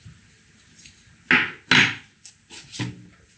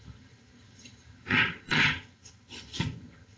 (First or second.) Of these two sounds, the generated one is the second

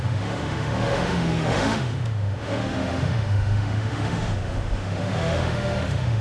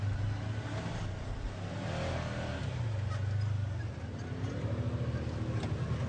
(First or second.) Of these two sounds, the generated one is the first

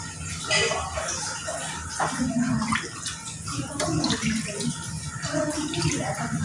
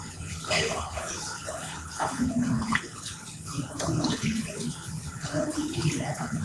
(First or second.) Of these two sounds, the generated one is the second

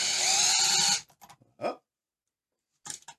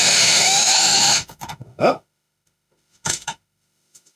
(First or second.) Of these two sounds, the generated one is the second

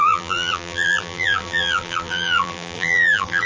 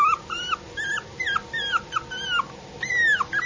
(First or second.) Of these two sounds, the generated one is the first